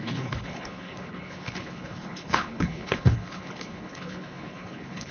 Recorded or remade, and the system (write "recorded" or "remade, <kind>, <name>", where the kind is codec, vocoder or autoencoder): remade, codec, HILCodec